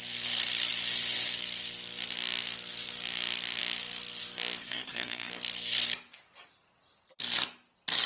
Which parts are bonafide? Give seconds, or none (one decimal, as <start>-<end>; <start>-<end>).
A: 0.0-4.6; 5.3-8.1